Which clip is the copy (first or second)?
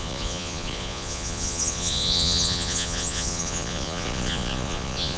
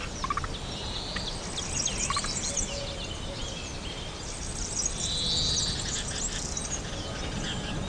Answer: first